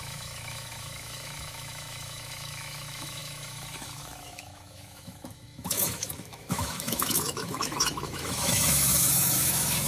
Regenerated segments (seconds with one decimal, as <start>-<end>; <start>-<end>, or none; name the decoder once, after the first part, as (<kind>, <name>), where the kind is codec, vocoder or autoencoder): 0.0-9.9 (autoencoder, DAC-VAE)